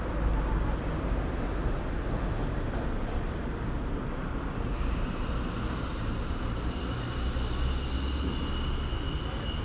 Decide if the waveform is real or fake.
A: real